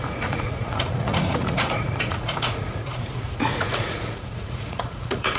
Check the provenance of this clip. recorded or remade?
remade